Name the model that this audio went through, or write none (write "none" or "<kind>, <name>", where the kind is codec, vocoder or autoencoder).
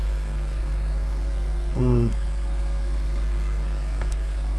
codec, SNAC